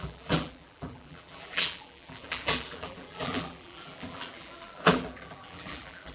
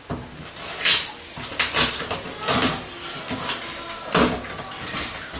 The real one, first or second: second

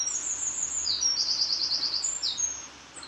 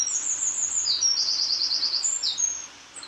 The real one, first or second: second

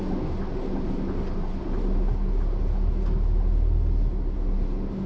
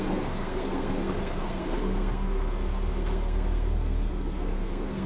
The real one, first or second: first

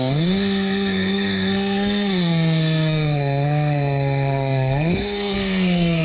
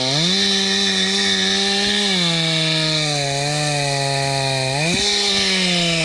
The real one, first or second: second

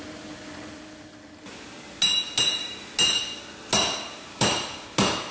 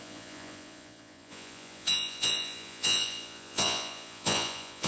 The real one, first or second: first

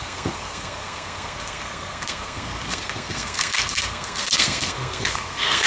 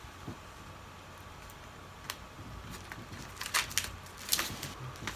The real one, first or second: second